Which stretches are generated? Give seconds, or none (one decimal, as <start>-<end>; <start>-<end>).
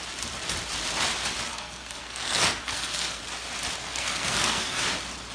1.5-3.2; 3.8-4.8